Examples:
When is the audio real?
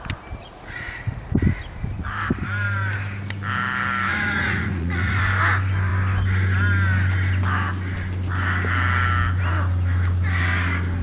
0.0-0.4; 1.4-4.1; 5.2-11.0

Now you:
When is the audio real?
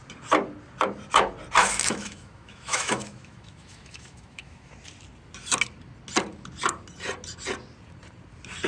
0.0-1.6; 4.7-8.7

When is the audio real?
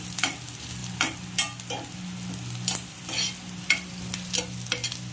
0.0-5.1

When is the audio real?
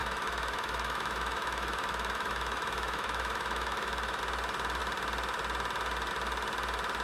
4.2-7.0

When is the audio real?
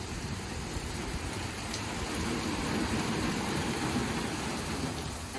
4.0-4.6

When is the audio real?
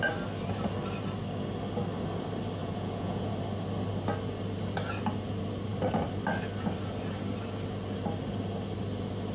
0.0-2.6; 3.3-9.3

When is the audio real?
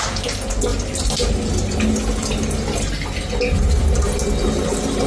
0.0-5.1